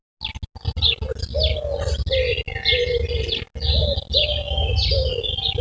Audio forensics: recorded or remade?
recorded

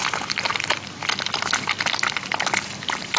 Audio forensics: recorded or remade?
recorded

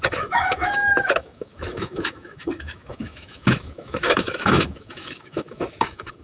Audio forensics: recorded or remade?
remade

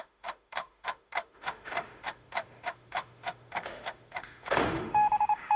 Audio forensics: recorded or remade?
remade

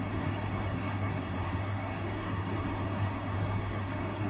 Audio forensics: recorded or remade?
remade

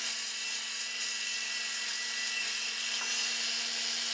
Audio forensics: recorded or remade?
recorded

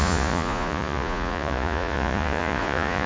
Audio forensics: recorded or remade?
remade